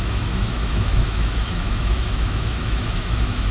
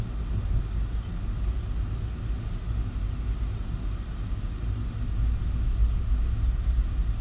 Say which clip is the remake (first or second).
first